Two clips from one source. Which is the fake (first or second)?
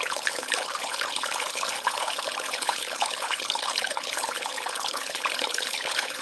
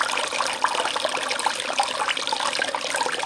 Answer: first